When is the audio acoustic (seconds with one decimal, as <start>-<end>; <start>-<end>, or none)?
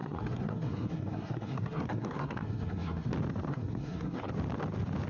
3.1-3.5; 4.3-5.1